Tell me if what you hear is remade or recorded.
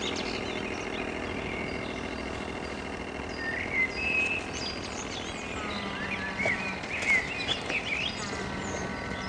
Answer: recorded